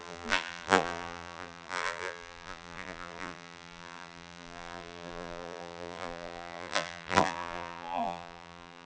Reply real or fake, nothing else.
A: fake